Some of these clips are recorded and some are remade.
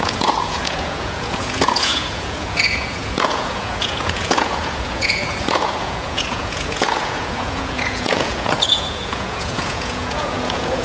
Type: remade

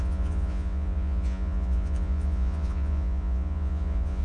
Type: remade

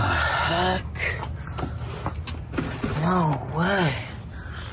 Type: recorded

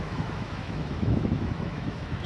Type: remade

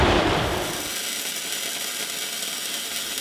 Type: recorded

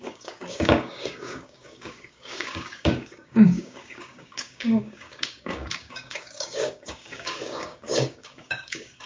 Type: remade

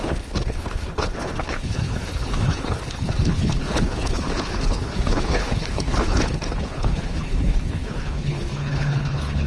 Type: remade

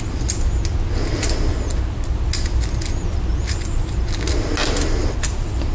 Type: recorded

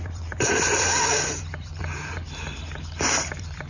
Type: remade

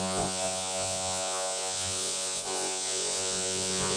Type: remade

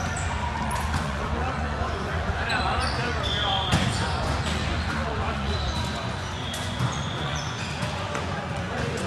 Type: remade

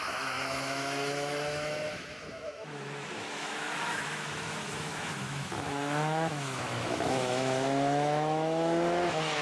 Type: remade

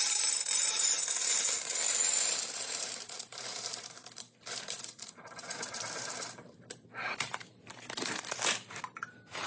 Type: remade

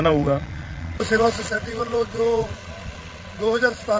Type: remade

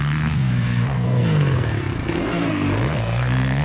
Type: remade